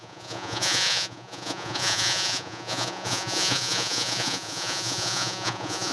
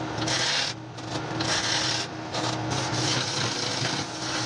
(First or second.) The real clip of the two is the second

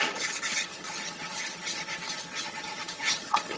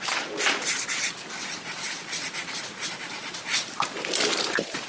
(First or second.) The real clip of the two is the second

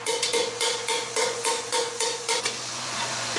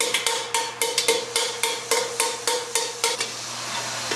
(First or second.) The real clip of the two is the second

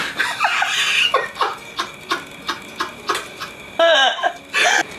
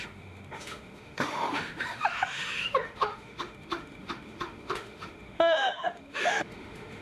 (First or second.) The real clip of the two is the first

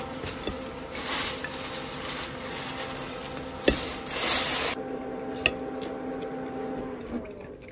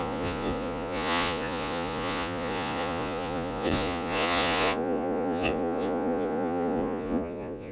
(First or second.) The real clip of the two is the first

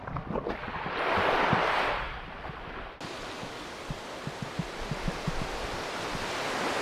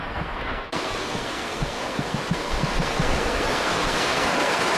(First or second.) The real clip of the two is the first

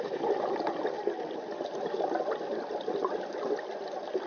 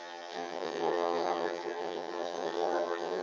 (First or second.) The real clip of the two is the first